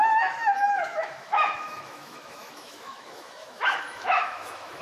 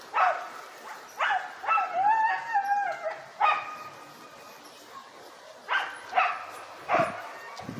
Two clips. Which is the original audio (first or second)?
second